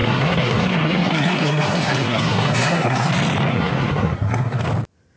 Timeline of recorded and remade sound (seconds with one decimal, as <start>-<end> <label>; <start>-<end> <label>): 0.0-3.1 remade; 3.1-3.5 recorded; 3.5-4.6 remade; 4.6-5.2 recorded